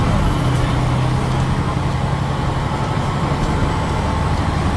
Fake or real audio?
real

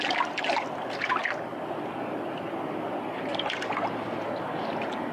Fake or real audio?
real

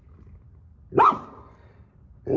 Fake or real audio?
real